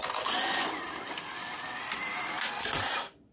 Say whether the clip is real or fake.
real